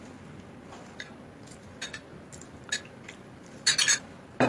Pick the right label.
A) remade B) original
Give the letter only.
B